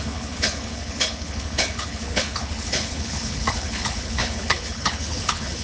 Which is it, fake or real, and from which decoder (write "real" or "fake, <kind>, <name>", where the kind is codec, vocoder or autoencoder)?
fake, codec, HILCodec